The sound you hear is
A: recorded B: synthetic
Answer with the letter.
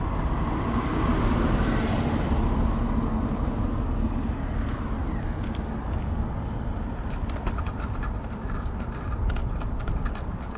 A